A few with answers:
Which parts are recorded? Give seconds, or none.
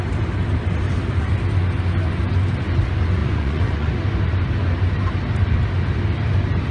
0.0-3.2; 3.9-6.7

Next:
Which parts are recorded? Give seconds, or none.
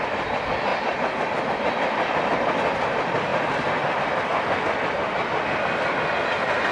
0.0-6.7